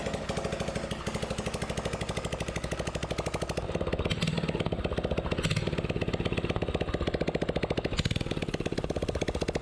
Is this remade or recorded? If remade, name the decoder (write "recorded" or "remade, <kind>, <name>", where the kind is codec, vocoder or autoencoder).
recorded